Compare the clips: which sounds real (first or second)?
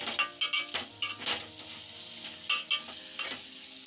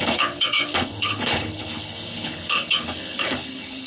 first